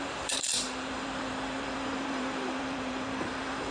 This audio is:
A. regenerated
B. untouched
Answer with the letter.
A